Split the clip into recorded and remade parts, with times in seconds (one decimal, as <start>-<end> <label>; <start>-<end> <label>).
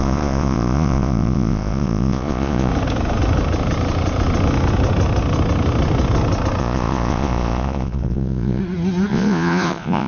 0.0-2.7 remade; 2.7-6.6 recorded; 6.6-8.6 remade; 8.6-9.1 recorded; 9.1-10.1 remade